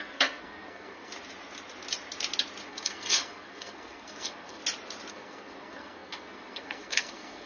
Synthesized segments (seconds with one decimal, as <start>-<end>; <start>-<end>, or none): 0.0-1.1; 2.7-4.6; 5.1-7.5